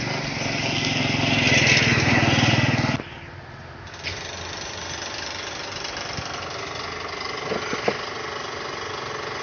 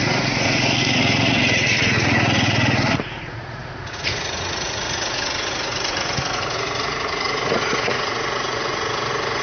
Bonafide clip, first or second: first